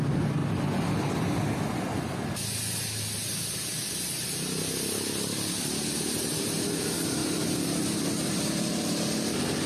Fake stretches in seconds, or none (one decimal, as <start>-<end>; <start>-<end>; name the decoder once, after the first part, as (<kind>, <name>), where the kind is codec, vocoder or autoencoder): none